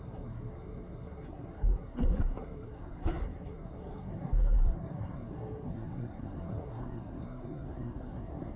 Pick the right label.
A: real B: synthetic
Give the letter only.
B